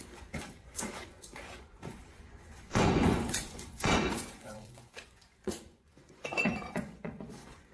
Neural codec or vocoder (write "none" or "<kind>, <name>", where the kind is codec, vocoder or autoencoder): vocoder, Vocos